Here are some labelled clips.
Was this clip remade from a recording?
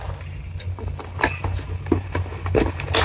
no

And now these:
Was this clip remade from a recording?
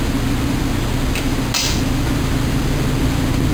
no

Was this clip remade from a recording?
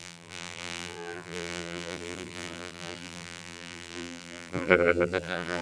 yes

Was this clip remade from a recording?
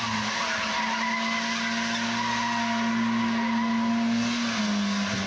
no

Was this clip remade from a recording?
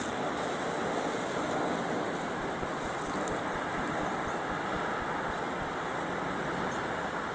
no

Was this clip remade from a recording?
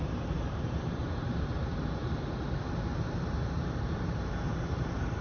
yes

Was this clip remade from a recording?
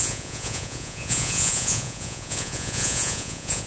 yes